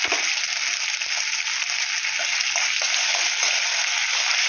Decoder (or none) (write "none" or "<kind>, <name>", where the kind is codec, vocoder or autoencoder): none